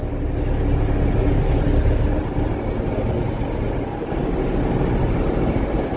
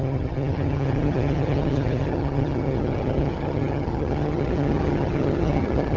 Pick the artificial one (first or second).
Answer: second